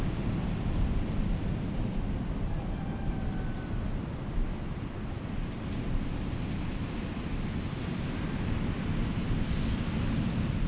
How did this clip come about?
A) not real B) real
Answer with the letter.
B